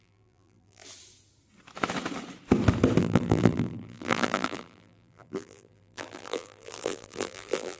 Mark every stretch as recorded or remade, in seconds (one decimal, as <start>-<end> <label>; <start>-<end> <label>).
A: 0.0-0.8 remade; 0.8-3.0 recorded; 3.0-7.8 remade